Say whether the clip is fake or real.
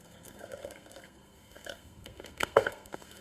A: fake